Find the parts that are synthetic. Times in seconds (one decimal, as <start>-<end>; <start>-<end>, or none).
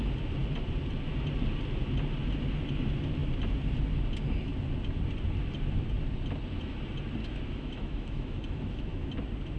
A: 7.2-9.1